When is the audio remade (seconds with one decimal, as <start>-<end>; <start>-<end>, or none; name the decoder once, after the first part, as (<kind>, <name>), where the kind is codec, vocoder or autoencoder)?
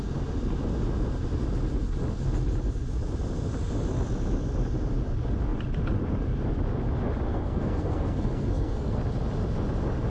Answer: 7.3-9.0 (codec, SNAC)